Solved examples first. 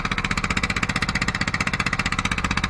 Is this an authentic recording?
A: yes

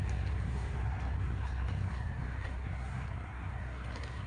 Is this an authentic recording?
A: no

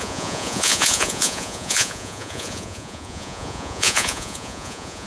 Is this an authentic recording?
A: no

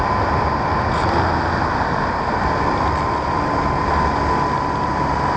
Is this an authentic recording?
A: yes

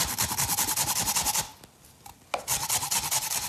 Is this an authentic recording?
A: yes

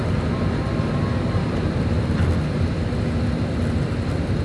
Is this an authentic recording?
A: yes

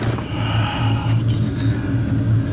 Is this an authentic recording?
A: yes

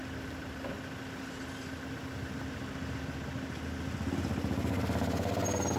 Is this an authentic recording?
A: yes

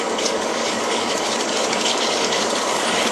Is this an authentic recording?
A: no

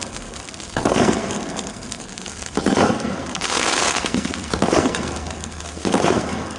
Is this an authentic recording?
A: no